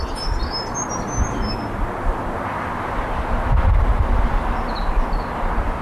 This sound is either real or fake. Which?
real